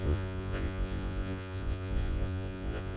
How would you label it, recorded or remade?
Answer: remade